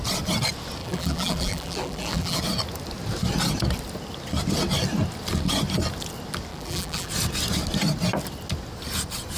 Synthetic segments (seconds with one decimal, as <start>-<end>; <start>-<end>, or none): 0.8-2.4; 6.5-7.1